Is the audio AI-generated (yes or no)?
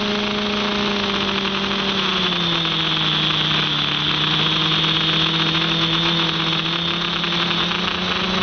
no